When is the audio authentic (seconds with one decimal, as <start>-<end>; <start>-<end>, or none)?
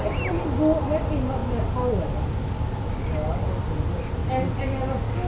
0.0-5.3